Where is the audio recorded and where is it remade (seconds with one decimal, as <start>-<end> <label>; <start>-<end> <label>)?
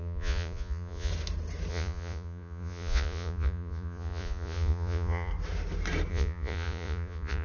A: 0.0-1.1 remade; 1.1-1.7 recorded; 1.7-5.3 remade; 5.3-6.1 recorded; 6.1-7.4 remade